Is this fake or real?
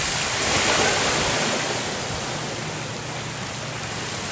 real